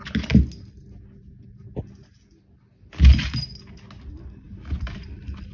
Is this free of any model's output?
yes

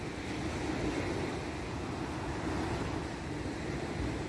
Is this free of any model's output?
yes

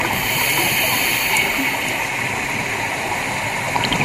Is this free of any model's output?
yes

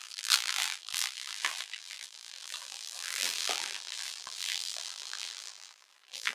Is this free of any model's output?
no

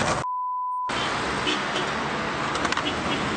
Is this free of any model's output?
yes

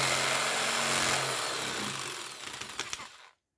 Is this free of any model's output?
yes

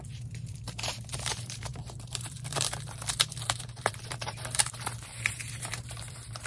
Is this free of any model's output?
no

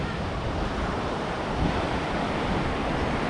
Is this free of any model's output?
no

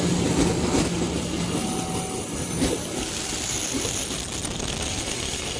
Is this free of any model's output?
yes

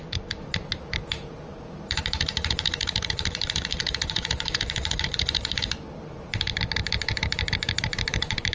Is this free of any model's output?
no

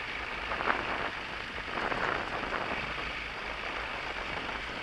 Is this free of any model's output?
no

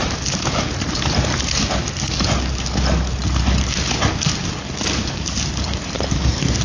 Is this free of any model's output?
yes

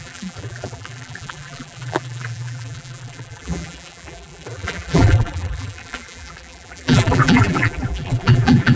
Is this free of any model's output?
no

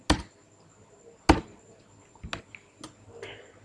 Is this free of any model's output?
yes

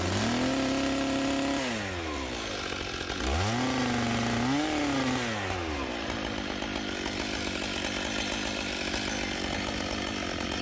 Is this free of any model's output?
yes